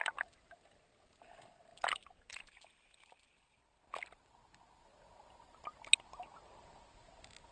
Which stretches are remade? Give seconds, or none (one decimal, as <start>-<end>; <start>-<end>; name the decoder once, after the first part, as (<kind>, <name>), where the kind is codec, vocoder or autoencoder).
none